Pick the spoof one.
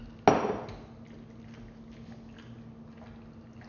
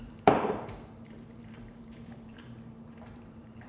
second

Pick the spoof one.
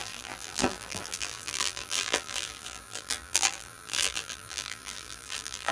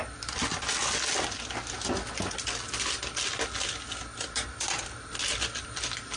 first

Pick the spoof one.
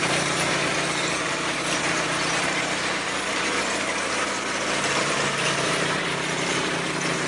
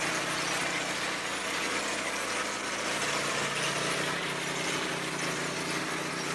first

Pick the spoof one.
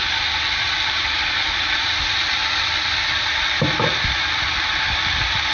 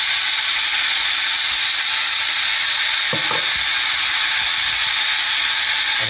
first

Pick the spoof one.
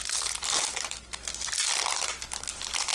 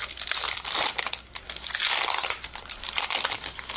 second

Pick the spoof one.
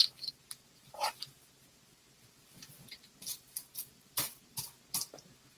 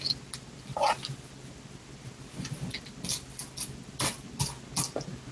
first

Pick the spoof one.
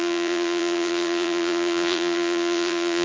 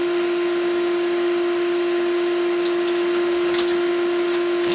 first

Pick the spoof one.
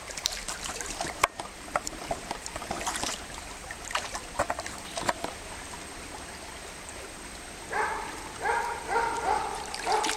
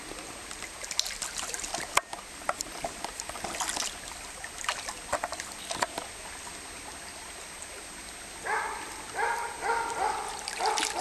first